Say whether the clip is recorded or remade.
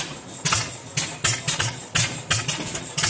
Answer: recorded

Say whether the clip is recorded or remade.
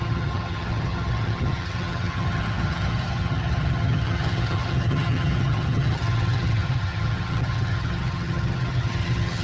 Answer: remade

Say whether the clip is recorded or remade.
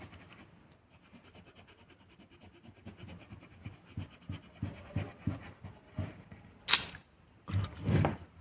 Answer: recorded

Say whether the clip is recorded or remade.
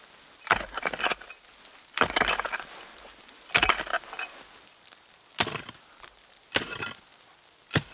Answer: recorded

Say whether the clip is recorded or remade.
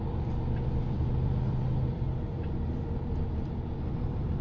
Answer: recorded